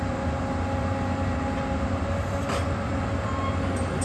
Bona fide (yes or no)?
yes